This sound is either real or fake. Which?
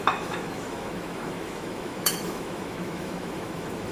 fake